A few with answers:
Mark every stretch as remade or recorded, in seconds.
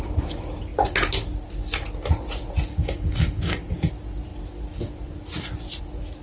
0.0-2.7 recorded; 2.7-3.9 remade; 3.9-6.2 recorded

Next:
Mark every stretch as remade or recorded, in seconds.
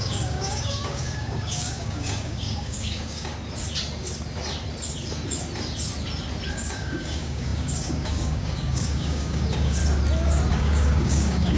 0.0-3.3 remade; 3.3-6.5 recorded; 6.5-9.8 remade; 9.8-10.5 recorded; 10.5-11.6 remade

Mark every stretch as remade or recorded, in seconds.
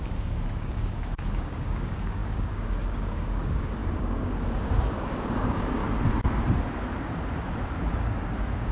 0.0-5.8 remade; 5.8-7.9 recorded; 7.9-8.7 remade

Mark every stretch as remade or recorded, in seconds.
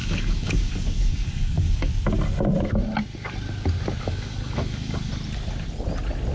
0.0-1.9 remade; 1.9-4.0 recorded; 4.0-5.1 remade; 5.1-6.3 recorded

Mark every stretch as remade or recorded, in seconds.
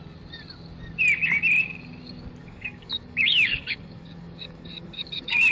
0.0-2.4 recorded; 2.4-5.5 remade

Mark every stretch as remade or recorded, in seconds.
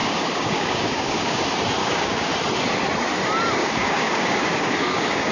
0.0-1.4 remade; 1.4-1.8 recorded; 1.8-2.3 remade; 2.3-3.6 recorded; 3.6-5.3 remade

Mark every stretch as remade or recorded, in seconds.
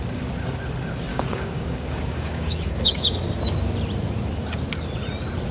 0.0-1.1 recorded; 1.1-3.1 remade; 3.1-5.5 recorded